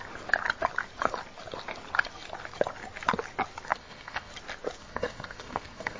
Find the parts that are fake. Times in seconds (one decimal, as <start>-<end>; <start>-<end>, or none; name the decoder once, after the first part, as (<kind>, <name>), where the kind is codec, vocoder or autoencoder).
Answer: 3.7-4.3 (codec, SNAC); 4.8-6.0